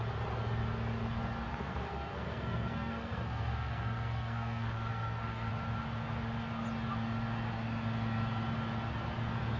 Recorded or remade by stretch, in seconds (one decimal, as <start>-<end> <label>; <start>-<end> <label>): 0.0-1.5 recorded; 1.5-5.5 remade; 5.5-9.6 recorded

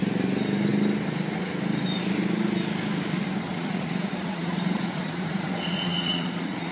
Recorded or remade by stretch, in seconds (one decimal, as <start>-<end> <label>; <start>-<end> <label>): 0.0-3.5 recorded; 3.5-6.7 remade

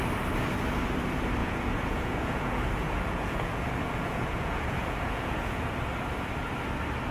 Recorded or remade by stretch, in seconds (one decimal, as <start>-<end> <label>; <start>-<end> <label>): 0.0-1.4 recorded; 1.4-5.7 remade; 5.7-7.1 recorded